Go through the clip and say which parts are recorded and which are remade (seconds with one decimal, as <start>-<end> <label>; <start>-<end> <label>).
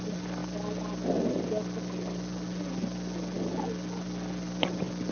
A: 0.0-5.1 recorded